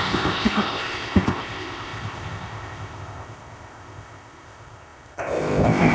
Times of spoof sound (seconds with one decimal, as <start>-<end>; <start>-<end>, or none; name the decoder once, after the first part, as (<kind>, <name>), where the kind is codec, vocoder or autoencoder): 0.0-5.9 (codec, ZipCodec)